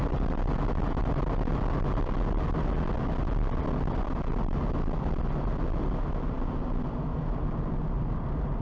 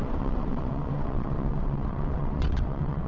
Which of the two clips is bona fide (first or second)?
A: first